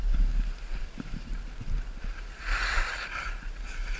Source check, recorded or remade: recorded